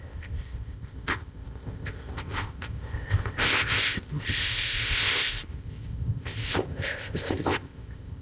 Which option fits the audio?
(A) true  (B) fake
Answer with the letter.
B